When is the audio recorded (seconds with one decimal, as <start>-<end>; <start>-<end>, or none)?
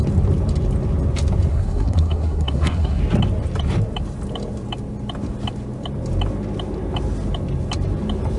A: 0.0-1.5; 3.0-8.4